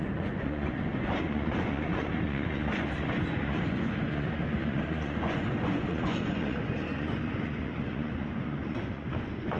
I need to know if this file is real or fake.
fake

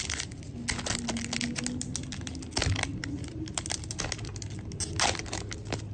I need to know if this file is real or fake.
real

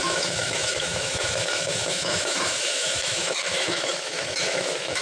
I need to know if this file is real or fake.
fake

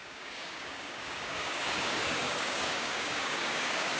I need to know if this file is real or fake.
fake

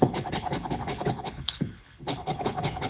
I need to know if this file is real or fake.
fake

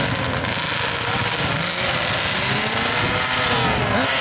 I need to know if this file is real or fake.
real